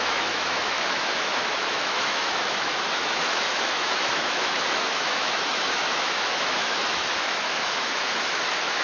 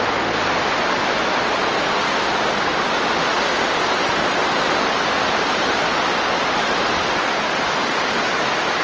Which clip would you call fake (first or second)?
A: first